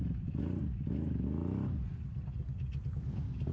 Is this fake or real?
real